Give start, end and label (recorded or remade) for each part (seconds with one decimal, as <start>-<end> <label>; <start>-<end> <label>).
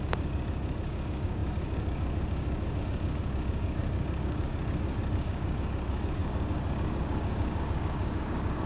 0.0-8.7 remade